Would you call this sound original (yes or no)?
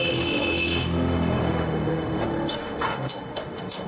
no